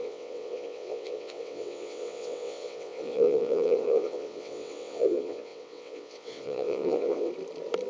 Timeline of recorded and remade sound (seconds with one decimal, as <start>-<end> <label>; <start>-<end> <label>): 0.0-7.3 remade; 7.3-7.9 recorded